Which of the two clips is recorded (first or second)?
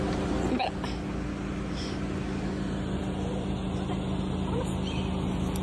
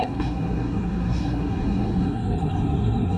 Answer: first